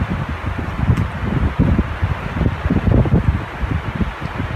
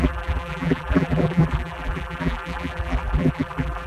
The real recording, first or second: first